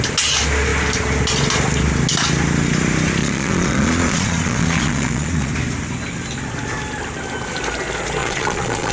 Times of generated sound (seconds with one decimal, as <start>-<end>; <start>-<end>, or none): 3.2-5.5; 8.2-8.9